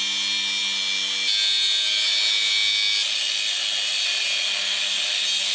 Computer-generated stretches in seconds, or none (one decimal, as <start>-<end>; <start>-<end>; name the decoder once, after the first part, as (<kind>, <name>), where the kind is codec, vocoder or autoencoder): none